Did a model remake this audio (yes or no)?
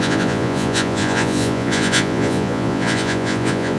yes